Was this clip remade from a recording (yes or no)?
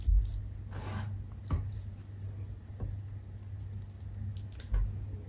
no